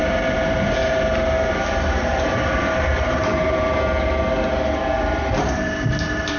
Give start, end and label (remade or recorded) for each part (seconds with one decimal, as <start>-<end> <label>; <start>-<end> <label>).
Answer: 0.0-0.8 remade; 0.8-1.5 recorded; 1.5-3.7 remade; 3.7-4.8 recorded; 4.8-6.4 remade